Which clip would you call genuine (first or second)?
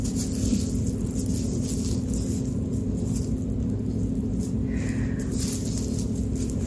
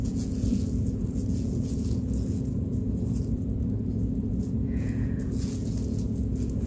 first